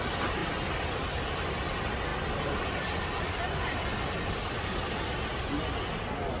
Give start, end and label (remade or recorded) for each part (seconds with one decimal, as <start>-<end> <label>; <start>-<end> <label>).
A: 0.0-6.4 recorded